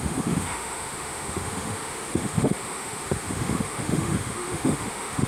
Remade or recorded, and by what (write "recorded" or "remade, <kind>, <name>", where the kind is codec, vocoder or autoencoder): remade, autoencoder, DAC-VAE